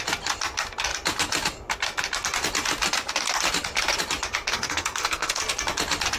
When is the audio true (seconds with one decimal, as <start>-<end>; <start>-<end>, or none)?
0.0-4.5; 5.4-6.2